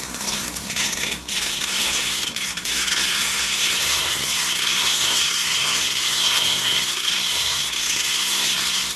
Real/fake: fake